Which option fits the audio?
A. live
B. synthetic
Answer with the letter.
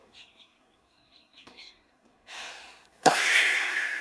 B